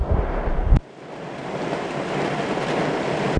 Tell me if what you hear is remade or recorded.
recorded